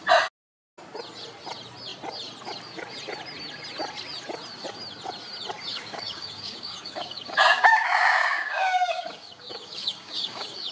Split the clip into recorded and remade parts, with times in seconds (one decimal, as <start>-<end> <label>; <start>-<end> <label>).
0.0-5.7 recorded; 5.7-10.7 remade